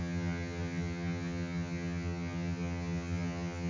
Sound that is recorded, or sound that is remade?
remade